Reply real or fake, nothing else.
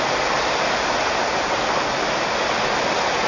real